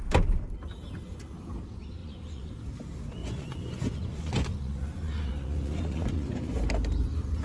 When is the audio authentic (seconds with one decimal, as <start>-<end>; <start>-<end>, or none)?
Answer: 0.0-2.0; 2.5-3.2; 6.6-7.4